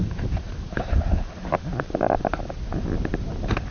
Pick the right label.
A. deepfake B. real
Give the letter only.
B